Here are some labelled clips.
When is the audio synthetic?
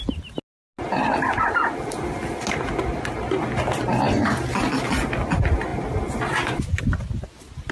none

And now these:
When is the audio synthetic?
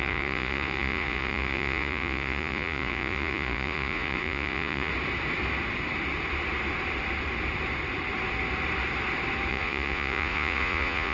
0.0-4.9; 9.5-11.1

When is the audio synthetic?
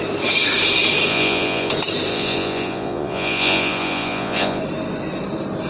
1.1-1.7; 2.1-4.6